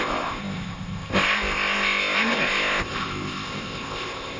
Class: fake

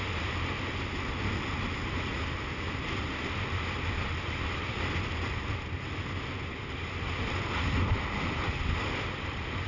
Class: real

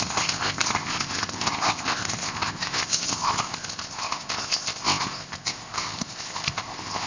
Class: fake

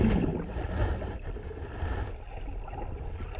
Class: real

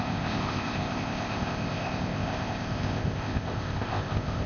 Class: fake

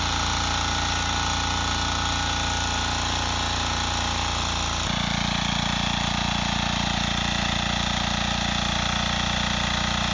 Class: real